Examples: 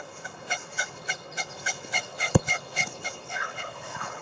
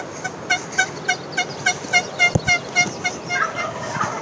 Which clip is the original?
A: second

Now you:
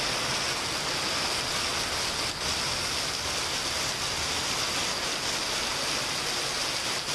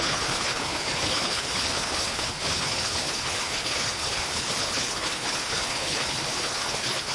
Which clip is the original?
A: first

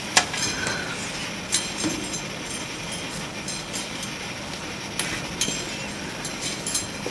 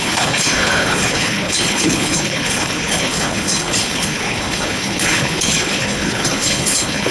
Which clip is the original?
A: first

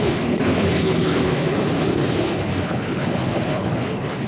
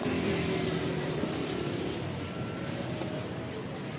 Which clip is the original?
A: second